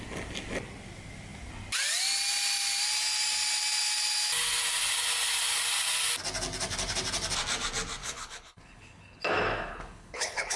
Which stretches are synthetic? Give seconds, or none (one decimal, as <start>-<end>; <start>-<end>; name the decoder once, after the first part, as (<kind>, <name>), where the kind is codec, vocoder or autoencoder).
8.0-9.2 (codec, HILCodec); 9.7-10.6